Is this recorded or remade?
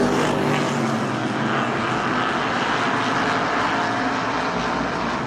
recorded